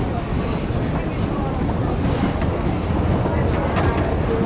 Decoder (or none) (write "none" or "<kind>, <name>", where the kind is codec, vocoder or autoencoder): none